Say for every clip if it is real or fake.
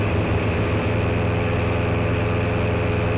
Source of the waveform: real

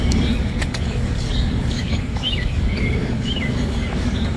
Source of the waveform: fake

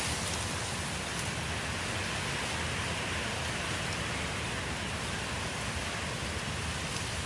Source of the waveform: real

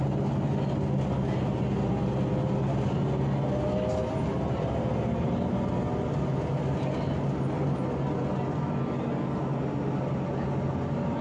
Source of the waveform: real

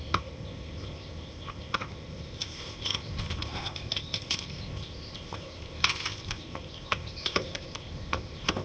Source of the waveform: fake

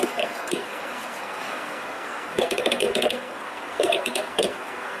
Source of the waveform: fake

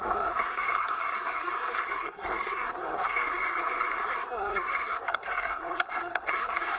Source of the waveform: fake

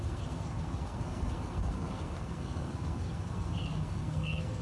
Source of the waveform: fake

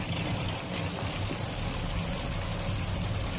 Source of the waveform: real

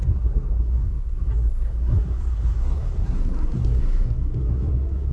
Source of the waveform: fake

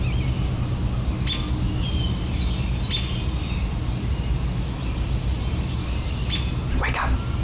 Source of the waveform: real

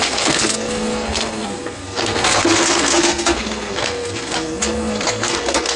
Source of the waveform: fake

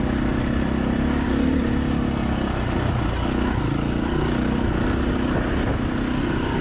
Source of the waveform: real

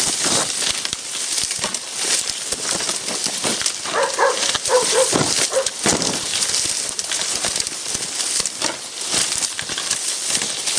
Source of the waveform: real